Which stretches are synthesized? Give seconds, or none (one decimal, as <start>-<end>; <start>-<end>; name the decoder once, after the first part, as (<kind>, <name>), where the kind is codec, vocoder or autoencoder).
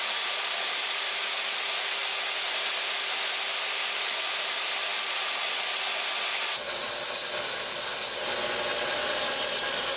none